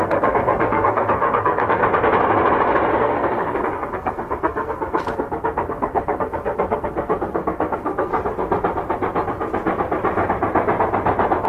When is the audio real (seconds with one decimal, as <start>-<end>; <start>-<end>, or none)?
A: 1.8-2.9; 8.1-11.5